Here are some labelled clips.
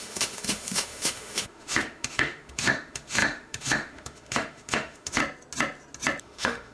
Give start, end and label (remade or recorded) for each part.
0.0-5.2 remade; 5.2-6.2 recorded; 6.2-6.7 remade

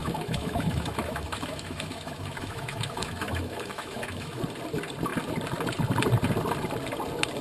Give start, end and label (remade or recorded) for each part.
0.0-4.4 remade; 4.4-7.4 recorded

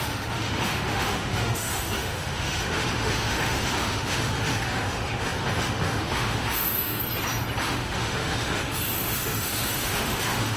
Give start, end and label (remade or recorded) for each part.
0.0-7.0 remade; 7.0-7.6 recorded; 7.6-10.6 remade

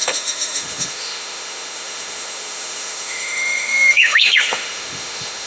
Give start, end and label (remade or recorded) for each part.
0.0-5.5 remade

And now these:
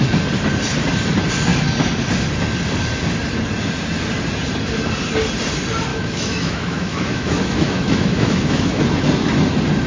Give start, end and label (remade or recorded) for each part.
0.0-5.9 recorded; 5.9-8.8 remade; 8.8-9.9 recorded

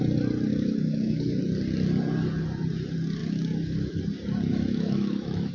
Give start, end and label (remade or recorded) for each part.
0.0-0.5 recorded; 0.5-1.4 remade; 1.4-3.2 recorded; 3.2-4.0 remade; 4.0-4.5 recorded; 4.5-5.5 remade

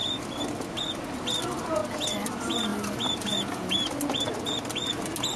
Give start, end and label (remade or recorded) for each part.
0.0-5.4 recorded